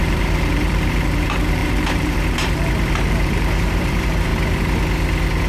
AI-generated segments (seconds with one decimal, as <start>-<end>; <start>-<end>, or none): 0.0-4.3